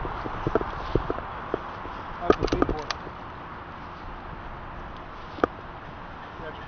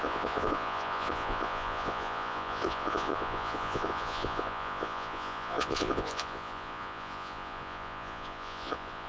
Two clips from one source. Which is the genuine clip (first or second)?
first